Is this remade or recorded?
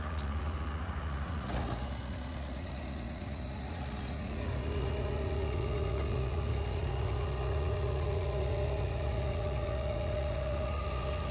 remade